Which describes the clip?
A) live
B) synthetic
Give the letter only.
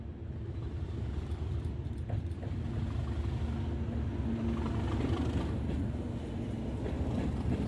A